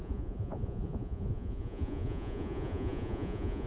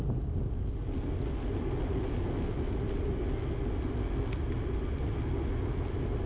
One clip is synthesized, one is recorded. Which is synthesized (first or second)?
first